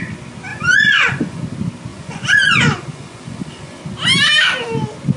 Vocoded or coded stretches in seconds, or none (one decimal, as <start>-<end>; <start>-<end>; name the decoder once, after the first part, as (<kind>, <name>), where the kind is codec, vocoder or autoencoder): 0.5-1.4 (vocoder, Vocos); 1.9-3.8